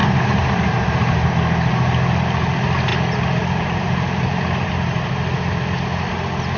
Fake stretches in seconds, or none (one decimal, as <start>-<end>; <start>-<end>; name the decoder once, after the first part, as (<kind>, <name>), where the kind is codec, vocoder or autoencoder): 0.0-1.3 (vocoder, BigVGAN v2); 2.9-5.1